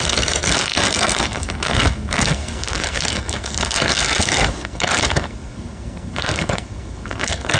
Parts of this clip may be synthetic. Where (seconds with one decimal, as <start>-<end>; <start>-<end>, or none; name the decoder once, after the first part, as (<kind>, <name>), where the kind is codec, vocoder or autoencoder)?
0.0-7.6 (codec, SNAC)